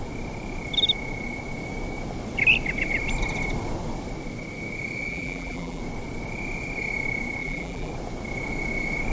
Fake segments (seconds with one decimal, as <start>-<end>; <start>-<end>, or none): 5.1-5.8; 7.4-7.9